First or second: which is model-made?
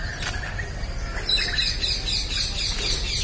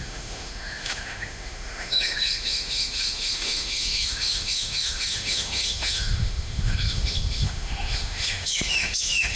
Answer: second